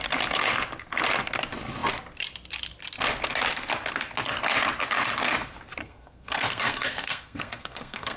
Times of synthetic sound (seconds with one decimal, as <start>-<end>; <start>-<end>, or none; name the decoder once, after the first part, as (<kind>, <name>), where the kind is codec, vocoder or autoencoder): 5.8-8.2 (codec, SNAC)